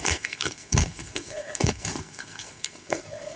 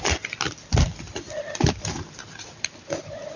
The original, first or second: second